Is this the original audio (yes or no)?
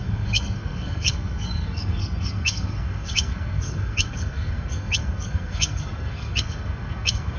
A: no